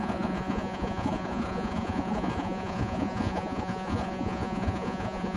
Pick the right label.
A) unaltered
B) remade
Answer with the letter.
B